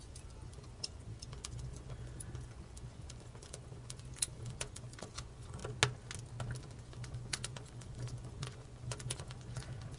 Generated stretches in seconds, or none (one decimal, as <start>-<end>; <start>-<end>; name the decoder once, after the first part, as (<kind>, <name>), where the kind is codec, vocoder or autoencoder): 0.0-5.6 (vocoder, Vocos); 6.8-10.0